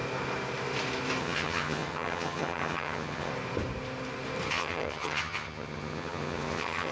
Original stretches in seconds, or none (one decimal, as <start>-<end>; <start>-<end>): 0.0-1.2; 3.3-4.5